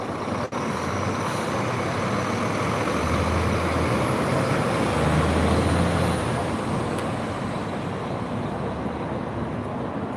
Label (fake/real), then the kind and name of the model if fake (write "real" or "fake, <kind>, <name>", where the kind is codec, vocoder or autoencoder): real